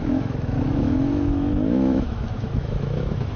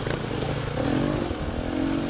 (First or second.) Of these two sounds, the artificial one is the first